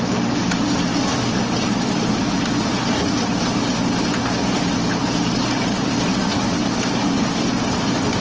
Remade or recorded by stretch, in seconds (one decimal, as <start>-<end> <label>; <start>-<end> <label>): 0.0-1.1 recorded; 1.1-3.5 remade; 3.5-8.2 recorded